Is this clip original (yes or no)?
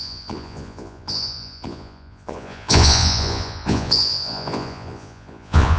no